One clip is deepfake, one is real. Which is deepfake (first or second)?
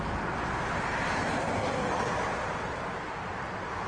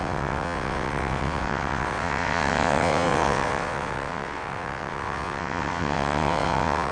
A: second